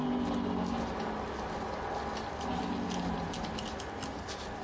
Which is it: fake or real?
real